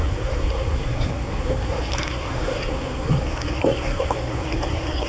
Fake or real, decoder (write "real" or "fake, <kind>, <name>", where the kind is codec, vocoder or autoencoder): fake, codec, SNAC